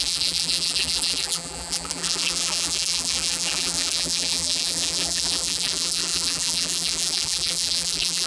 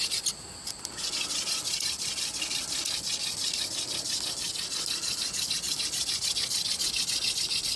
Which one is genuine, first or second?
second